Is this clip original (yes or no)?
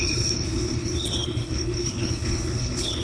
no